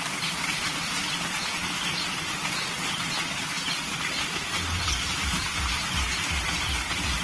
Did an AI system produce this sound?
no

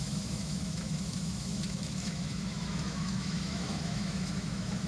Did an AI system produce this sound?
yes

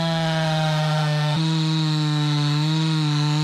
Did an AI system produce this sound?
yes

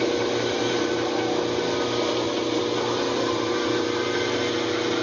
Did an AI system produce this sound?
no